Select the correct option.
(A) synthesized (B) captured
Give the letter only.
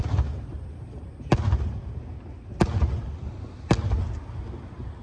B